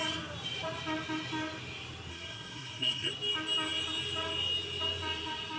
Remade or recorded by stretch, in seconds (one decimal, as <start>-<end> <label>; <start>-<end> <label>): 0.0-2.1 recorded; 2.1-3.1 remade; 3.1-5.6 recorded